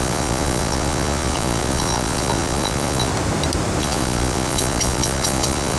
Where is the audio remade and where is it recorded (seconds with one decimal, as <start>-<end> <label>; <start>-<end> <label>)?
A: 0.0-3.1 remade; 3.1-3.8 recorded; 3.8-5.8 remade